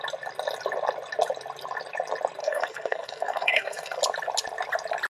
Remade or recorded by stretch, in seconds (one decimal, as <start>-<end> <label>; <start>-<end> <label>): 0.0-2.4 recorded; 2.4-4.0 remade; 4.0-5.1 recorded